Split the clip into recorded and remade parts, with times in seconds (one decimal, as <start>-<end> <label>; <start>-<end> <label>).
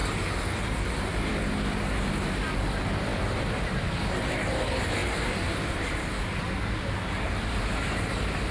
0.0-3.1 recorded; 3.1-4.0 remade; 4.0-5.0 recorded; 5.0-8.5 remade